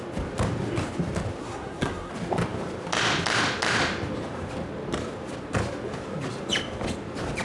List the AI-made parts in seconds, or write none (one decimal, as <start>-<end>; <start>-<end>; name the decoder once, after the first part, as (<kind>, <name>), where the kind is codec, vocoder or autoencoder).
1.4-2.1 (codec, SNAC)